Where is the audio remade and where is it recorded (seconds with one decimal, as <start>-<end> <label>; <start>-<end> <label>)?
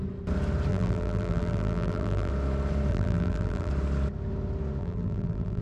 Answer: 0.0-0.7 recorded; 0.7-2.3 remade; 2.3-2.9 recorded; 2.9-3.7 remade; 3.7-4.8 recorded; 4.8-5.6 remade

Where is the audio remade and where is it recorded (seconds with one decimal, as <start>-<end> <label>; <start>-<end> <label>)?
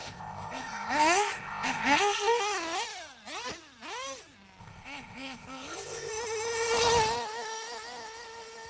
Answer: 0.0-2.4 remade; 2.4-4.6 recorded; 4.6-6.1 remade; 6.1-8.7 recorded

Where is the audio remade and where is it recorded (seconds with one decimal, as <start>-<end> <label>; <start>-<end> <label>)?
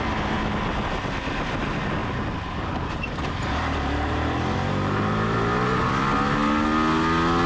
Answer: 0.0-2.0 recorded; 2.0-5.9 remade; 5.9-7.5 recorded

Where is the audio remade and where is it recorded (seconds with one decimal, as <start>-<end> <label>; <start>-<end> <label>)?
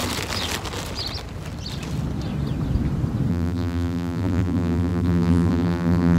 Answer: 0.0-3.3 recorded; 3.3-6.2 remade